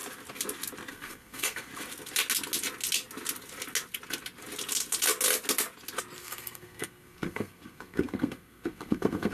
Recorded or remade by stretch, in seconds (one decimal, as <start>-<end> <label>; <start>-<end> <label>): 0.0-0.9 recorded; 0.9-1.7 remade; 1.7-6.2 recorded; 6.2-9.3 remade